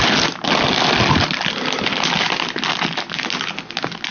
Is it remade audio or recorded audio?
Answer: recorded